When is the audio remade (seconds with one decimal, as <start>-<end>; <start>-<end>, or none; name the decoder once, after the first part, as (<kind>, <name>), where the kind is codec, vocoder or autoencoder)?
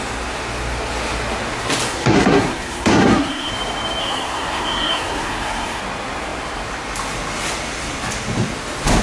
1.9-3.5 (codec, SNAC); 4.0-5.8